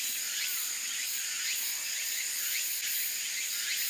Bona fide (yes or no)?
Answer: yes